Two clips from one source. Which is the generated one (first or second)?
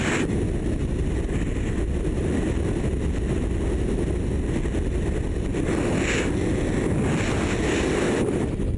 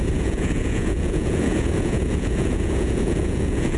second